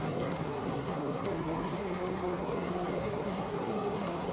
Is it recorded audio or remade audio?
remade